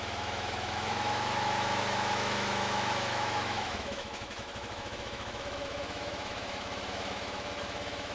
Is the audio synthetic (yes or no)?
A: yes